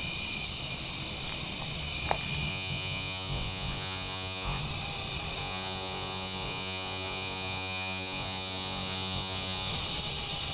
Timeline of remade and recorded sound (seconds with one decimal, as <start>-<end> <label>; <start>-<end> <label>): 0.0-2.5 recorded; 2.5-4.6 remade; 4.6-5.4 recorded; 5.4-9.7 remade; 9.7-10.5 recorded